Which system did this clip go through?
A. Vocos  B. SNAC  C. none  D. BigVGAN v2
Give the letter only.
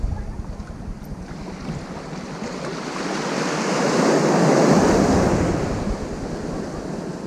C